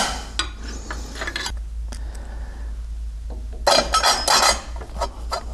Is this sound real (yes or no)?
yes